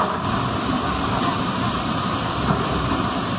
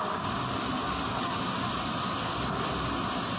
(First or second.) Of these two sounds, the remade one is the first